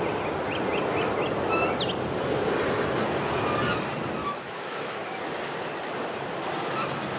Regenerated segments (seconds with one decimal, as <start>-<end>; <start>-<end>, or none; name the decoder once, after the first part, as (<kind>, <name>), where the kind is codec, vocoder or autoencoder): 4.2-5.2 (autoencoder, DAC-VAE)